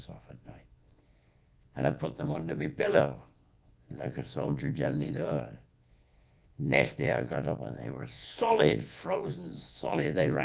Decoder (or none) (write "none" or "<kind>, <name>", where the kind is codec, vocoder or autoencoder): vocoder, Vocos